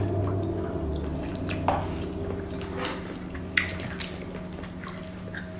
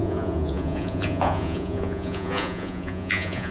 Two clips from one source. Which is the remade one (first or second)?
second